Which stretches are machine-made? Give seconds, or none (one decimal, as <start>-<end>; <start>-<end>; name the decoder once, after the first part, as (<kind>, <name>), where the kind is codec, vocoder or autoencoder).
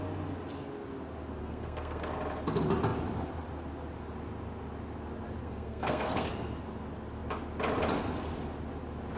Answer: 1.4-2.1 (codec, SNAC); 5.4-6.3